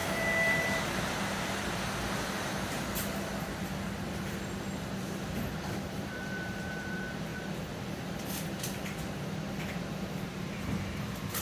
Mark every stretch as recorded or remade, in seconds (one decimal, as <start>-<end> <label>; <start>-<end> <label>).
0.0-4.9 recorded; 4.9-7.3 remade; 7.3-9.7 recorded; 9.7-11.4 remade